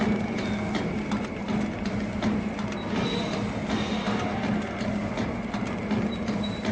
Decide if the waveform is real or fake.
real